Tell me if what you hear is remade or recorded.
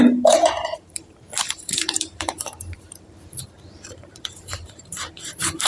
remade